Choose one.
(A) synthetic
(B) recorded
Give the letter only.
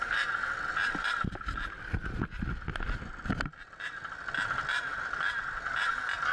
B